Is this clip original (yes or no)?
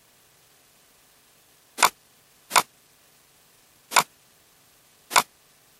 yes